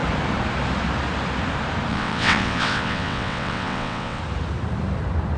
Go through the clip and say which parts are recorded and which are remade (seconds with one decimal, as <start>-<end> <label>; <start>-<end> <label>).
0.0-1.9 recorded; 1.9-4.2 remade; 4.2-5.4 recorded